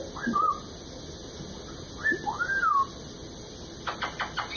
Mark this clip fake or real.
real